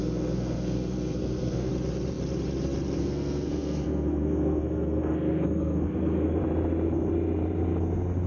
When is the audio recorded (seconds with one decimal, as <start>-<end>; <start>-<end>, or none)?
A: 1.7-3.0; 6.4-8.3